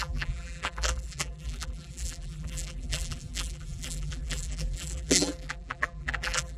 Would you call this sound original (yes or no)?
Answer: no